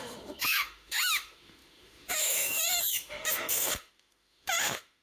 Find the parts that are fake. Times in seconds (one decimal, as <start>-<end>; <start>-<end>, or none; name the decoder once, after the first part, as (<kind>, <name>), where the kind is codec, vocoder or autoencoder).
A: 0.0-5.0 (autoencoder, DAC-VAE)